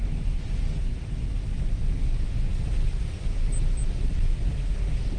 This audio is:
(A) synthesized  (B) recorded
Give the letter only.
B